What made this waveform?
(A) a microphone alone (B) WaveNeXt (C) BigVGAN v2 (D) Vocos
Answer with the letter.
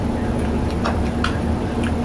A